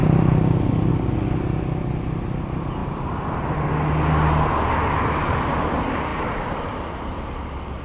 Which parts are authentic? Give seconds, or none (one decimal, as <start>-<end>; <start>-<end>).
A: 0.0-2.8; 3.7-6.1; 6.9-7.8